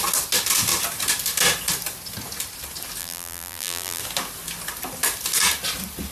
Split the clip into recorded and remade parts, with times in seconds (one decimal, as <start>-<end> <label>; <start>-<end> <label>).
0.0-3.0 recorded; 3.0-4.0 remade; 4.0-6.1 recorded